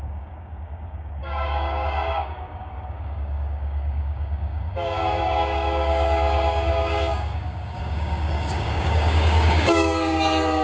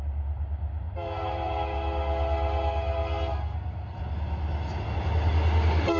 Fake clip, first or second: first